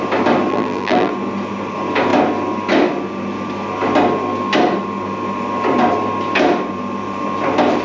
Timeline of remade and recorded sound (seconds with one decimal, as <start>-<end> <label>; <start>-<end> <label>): 0.0-0.5 recorded; 0.5-1.1 remade; 1.1-7.8 recorded